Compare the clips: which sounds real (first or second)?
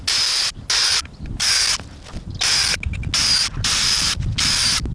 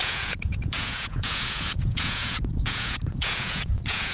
first